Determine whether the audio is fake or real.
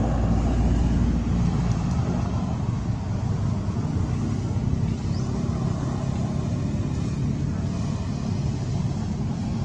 real